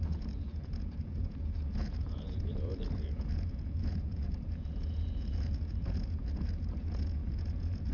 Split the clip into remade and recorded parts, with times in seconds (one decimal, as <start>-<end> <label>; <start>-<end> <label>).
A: 0.0-7.9 remade